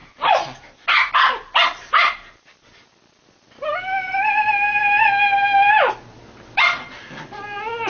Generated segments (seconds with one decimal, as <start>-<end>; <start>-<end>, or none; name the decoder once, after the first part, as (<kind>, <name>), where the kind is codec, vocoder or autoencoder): none